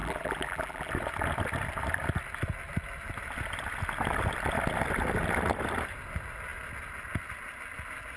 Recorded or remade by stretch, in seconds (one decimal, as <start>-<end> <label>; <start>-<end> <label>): 0.0-0.9 remade; 0.9-8.2 recorded